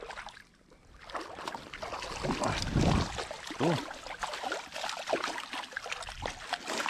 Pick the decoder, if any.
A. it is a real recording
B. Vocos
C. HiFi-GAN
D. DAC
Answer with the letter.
A